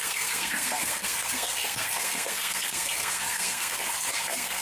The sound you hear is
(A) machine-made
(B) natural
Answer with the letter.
A